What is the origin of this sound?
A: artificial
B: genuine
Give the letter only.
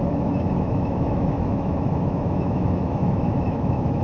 A